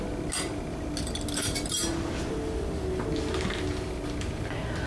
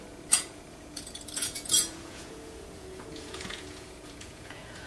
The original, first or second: first